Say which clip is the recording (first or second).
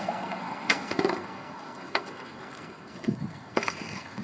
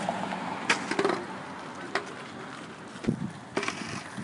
second